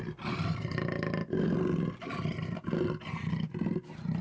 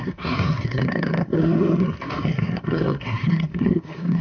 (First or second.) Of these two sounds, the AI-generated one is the second